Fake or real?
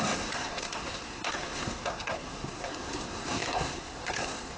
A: fake